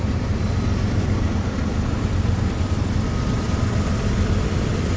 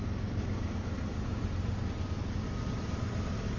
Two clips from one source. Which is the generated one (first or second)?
first